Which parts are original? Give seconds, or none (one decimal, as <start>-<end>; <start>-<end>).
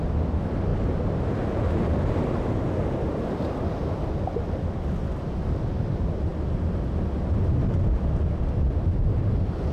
0.0-9.7